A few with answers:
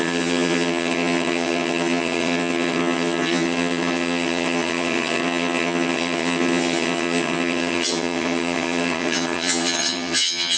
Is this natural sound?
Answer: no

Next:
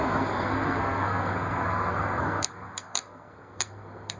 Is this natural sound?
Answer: no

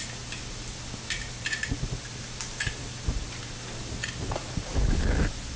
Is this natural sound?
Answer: yes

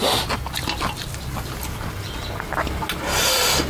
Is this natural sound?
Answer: yes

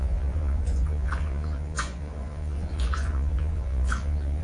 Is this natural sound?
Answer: no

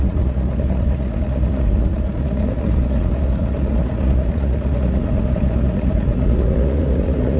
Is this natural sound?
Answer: no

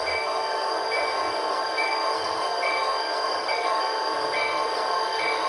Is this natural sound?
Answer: no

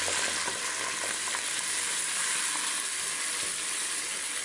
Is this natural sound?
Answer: yes